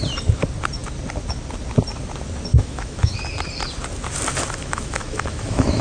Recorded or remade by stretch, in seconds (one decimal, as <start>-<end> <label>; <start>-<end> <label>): 0.0-2.5 recorded; 2.5-3.2 remade; 3.2-4.6 recorded; 4.6-5.8 remade